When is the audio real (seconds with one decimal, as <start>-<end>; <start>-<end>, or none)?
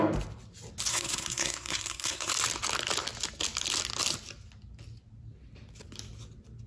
0.0-0.9; 2.3-6.7